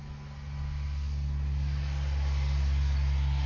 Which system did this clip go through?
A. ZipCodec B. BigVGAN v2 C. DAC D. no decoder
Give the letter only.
D